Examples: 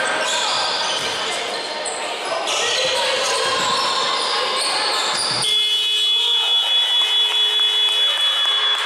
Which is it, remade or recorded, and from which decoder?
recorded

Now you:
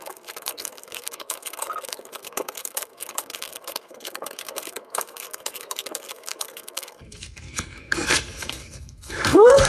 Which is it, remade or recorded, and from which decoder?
remade, codec, SNAC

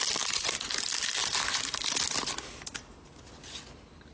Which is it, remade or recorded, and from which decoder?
recorded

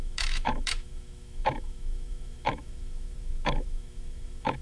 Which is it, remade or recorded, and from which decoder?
remade, autoencoder, DAC-VAE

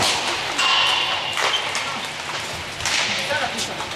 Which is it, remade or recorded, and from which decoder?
remade, vocoder, BigVGAN v2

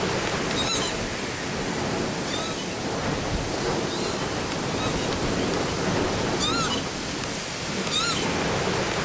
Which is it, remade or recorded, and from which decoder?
recorded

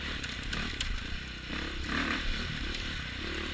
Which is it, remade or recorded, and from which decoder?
recorded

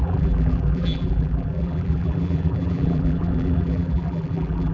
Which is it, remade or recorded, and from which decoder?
remade, vocoder, BigVGAN v2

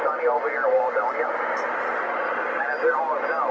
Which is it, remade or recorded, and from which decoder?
recorded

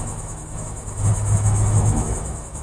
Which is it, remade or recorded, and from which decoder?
remade, autoencoder, DAC-VAE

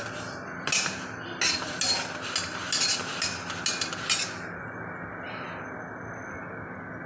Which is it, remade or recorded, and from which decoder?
recorded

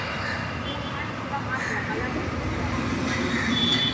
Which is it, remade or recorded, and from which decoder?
recorded